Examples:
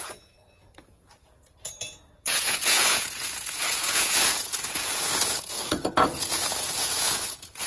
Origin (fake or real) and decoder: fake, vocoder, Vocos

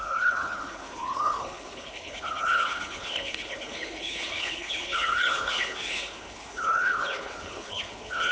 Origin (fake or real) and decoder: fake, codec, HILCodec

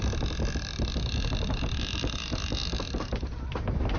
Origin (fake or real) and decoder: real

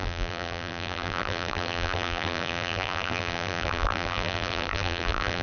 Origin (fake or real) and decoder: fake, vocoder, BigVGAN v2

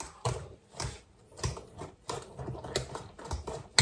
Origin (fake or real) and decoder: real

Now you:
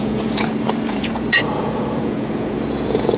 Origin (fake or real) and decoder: fake, vocoder, Vocos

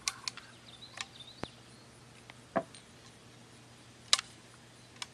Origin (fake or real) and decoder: real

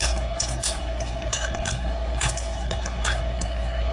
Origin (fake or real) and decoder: fake, codec, SNAC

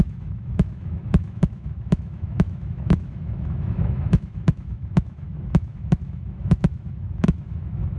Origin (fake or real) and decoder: fake, autoencoder, DAC-VAE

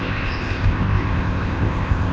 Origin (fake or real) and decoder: fake, codec, ZipCodec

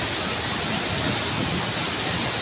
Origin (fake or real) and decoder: real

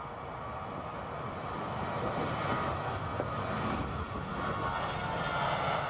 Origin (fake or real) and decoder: real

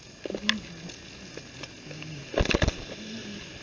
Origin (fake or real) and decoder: real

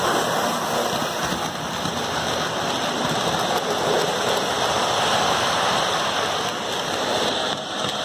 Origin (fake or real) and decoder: real